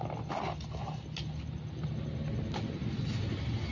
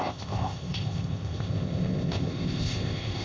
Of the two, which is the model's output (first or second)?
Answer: second